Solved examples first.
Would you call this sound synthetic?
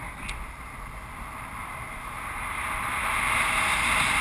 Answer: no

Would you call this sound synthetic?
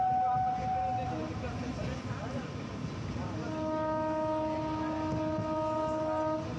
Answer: no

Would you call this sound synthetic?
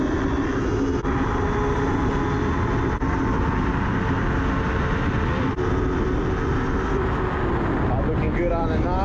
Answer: no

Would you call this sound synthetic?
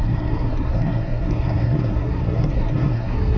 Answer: yes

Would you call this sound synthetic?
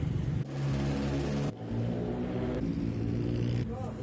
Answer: no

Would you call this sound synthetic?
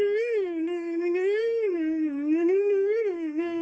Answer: yes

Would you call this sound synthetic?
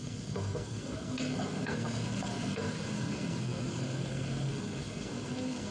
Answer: yes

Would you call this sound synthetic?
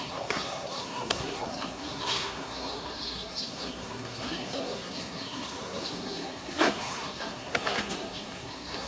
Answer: yes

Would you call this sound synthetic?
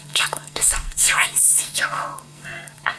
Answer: yes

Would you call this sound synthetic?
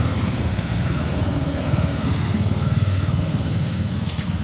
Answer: yes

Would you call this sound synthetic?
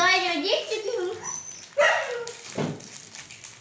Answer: no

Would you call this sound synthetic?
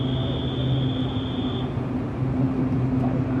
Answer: no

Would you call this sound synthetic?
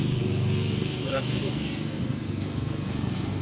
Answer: yes